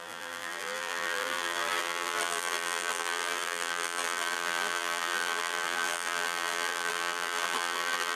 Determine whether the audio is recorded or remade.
remade